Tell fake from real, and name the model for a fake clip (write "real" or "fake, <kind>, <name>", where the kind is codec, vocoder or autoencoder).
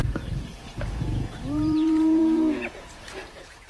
fake, vocoder, Vocos